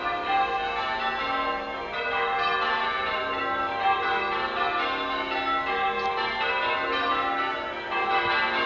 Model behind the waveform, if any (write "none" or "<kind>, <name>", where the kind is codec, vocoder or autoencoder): none